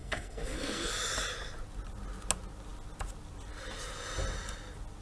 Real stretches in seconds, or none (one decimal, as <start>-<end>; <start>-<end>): 0.9-5.0